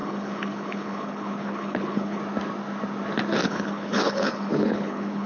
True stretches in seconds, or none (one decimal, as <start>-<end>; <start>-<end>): 2.2-3.4